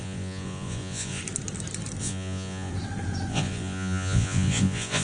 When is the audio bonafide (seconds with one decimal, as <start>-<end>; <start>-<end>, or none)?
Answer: 1.2-2.0; 2.7-3.3